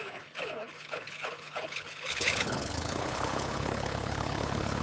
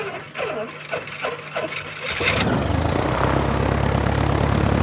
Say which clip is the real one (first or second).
second